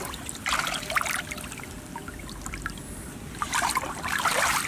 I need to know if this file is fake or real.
real